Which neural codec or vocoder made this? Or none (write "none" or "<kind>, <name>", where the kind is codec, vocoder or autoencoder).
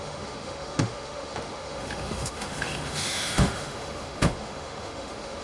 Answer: autoencoder, DAC-VAE